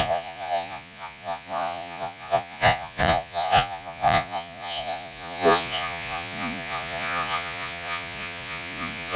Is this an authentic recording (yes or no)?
no